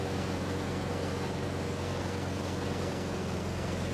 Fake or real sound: fake